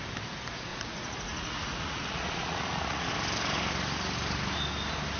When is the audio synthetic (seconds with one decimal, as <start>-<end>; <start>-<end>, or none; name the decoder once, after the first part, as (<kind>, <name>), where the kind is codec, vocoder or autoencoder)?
0.7-3.1 (vocoder, Vocos)